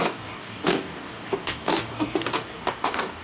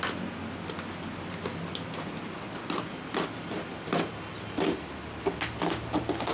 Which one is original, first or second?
second